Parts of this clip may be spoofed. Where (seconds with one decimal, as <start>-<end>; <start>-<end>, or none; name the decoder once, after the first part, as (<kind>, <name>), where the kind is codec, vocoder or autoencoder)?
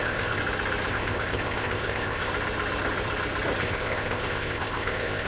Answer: 0.0-0.4 (codec, ZipCodec); 0.9-2.3; 3.6-5.3